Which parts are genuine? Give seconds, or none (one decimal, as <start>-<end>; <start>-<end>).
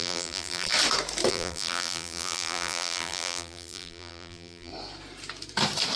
0.7-1.3; 4.7-6.0